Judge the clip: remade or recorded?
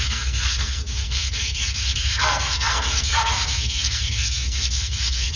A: remade